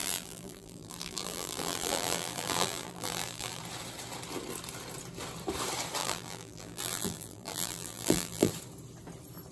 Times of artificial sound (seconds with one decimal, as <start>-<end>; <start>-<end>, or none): 0.0-3.6; 6.0-8.5